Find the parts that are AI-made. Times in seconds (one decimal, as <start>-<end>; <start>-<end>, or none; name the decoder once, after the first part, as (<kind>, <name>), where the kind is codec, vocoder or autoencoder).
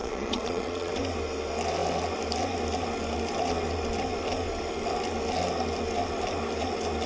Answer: 0.0-0.9 (vocoder, Vocos)